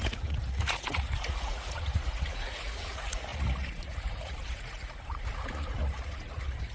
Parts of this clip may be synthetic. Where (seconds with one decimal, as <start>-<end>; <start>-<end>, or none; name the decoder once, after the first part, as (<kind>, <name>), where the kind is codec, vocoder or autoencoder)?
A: 0.0-6.7 (vocoder, Vocos)